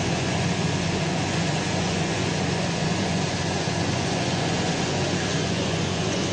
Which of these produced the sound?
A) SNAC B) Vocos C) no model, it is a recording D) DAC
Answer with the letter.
B